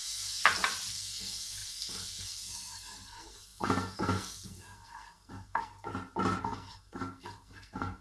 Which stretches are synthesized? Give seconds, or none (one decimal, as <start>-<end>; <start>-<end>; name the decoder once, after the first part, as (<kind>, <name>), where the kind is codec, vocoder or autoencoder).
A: 0.0-0.4 (codec, SNAC); 0.9-5.9; 6.4-8.0